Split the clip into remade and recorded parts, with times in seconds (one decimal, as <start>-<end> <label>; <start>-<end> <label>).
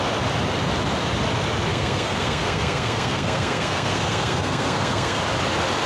0.0-1.7 recorded; 1.7-5.2 remade; 5.2-5.9 recorded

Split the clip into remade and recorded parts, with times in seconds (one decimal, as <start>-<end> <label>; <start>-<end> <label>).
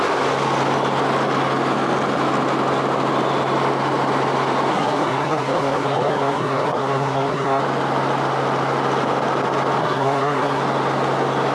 0.0-4.7 recorded; 4.7-7.6 remade; 7.6-9.8 recorded; 9.8-10.6 remade; 10.6-11.5 recorded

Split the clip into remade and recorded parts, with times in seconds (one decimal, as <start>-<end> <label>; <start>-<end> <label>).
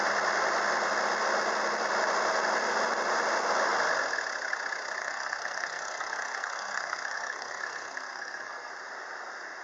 0.0-5.0 recorded; 5.0-8.7 remade; 8.7-9.6 recorded